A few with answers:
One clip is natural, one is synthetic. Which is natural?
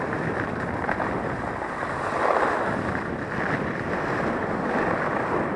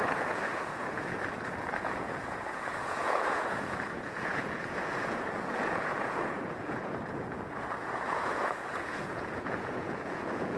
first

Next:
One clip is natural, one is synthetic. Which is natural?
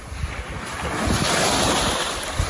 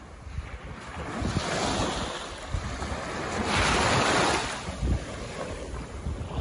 second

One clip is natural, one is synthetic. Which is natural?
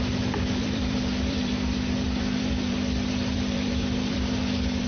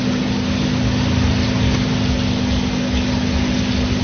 second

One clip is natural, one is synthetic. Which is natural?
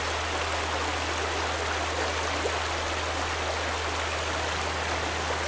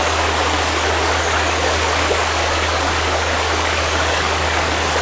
first